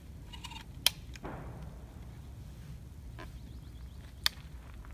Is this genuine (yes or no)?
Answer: yes